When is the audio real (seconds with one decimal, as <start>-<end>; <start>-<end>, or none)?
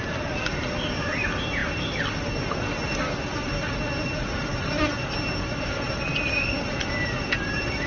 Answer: 0.0-7.9